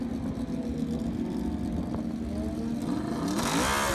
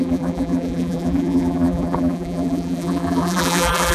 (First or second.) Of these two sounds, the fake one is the second